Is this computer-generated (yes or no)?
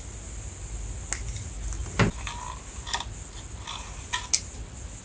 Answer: no